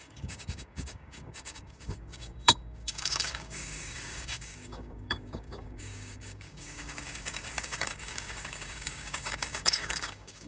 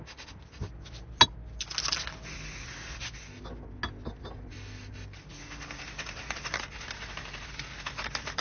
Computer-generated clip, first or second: first